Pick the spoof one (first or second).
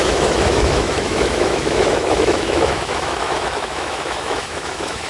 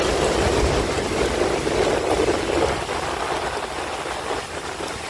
first